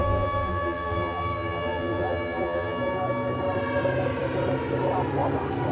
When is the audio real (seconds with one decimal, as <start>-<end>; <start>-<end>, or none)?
2.8-5.7